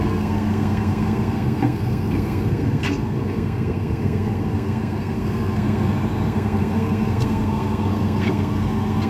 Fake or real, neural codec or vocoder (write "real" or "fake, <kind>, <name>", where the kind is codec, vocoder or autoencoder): fake, codec, SNAC